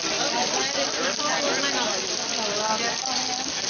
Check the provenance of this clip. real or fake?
real